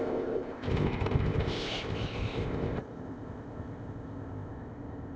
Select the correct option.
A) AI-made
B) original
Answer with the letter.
A